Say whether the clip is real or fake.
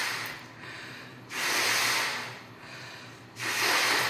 real